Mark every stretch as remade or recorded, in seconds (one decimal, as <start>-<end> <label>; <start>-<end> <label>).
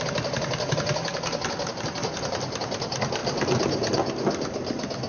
0.0-5.1 recorded